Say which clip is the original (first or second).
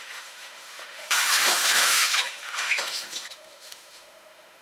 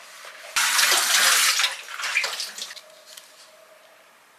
second